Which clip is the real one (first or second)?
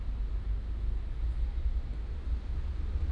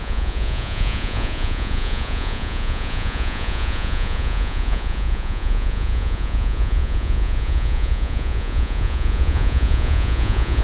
first